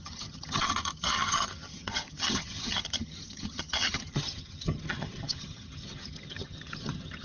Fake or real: fake